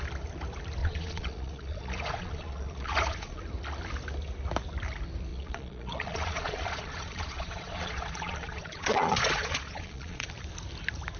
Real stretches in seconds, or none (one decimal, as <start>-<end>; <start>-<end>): 0.0-0.8; 3.4-5.3; 10.3-11.2